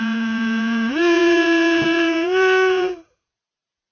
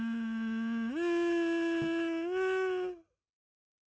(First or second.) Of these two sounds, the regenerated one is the first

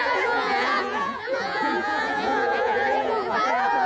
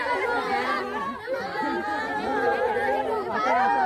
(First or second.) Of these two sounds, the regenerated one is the first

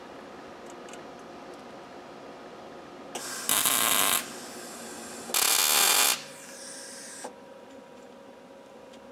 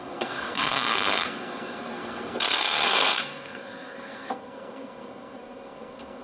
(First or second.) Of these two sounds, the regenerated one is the second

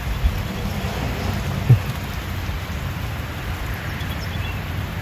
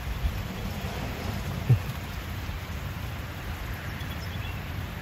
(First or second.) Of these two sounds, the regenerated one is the second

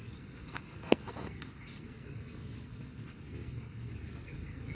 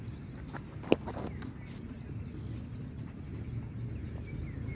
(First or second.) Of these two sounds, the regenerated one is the first